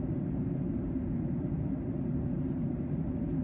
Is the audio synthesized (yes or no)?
yes